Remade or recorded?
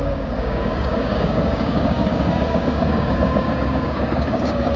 remade